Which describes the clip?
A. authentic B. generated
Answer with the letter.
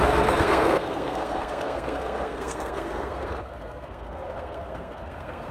B